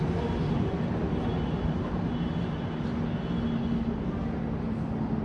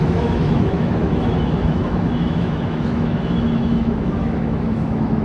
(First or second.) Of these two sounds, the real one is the first